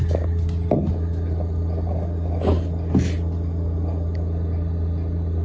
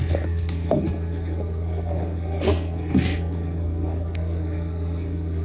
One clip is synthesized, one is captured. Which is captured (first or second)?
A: first